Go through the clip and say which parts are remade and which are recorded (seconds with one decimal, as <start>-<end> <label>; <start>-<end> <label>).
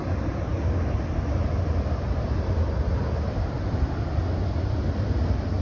0.0-5.6 recorded